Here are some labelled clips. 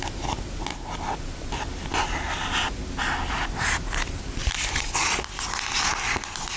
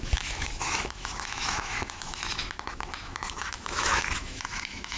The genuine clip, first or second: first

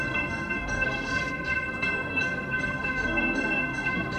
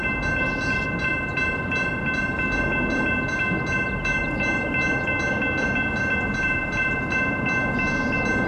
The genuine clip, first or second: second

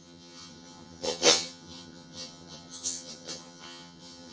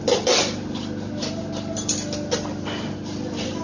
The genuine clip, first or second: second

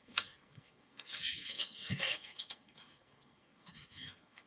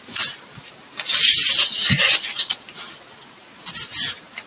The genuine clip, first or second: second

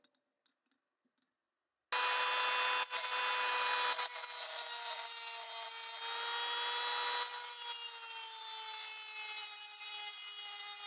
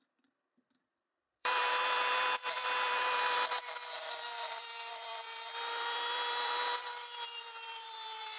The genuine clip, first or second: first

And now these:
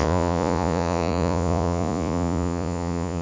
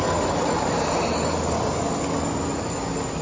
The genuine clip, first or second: second